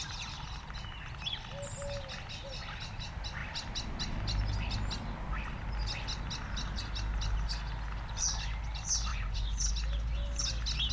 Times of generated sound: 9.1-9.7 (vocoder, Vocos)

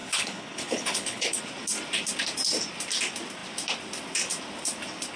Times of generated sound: 0.0-1.4 (codec, HILCodec)